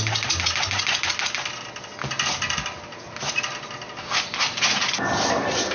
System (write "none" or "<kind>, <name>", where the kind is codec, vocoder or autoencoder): none